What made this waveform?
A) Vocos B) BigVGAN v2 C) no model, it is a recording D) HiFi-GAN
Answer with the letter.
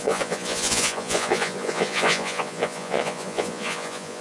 A